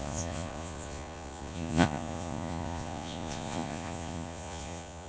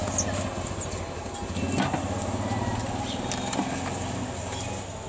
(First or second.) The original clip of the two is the second